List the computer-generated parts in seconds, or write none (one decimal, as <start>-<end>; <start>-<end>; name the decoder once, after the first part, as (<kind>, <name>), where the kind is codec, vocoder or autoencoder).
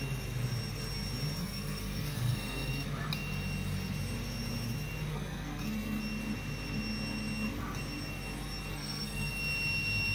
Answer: 1.4-2.7 (codec, SNAC); 5.1-6.0; 8.7-9.3